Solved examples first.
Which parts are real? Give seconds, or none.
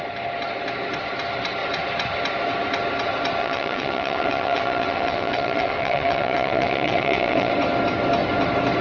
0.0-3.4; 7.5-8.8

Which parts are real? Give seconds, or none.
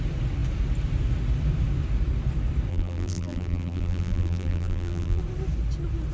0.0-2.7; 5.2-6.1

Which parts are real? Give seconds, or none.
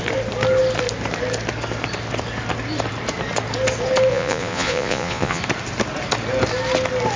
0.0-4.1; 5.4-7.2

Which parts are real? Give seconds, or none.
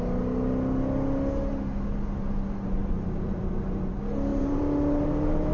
0.0-2.8; 3.8-4.3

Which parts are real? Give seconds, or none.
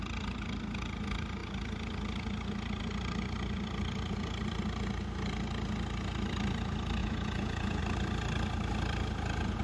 0.0-7.0; 7.8-9.6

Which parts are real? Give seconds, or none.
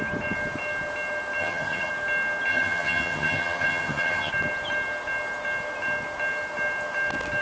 0.0-1.4; 1.9-2.5; 4.3-7.4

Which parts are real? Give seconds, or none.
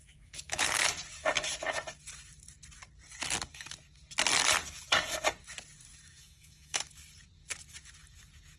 0.6-5.9; 6.9-8.6